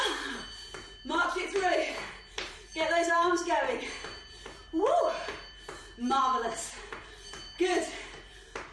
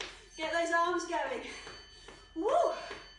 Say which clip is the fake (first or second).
first